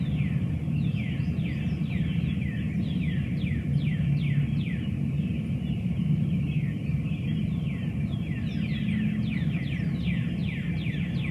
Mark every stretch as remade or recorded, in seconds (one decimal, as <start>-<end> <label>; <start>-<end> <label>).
0.0-11.3 recorded